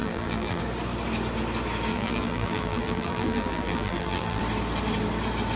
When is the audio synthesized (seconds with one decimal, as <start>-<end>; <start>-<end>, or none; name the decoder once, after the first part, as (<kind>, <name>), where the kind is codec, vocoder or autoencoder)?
0.0-0.6 (vocoder, BigVGAN v2); 1.9-4.4